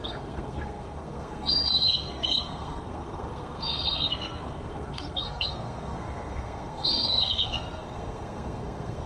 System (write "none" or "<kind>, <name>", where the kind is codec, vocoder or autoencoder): codec, SNAC